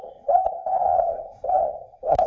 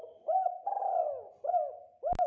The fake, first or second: first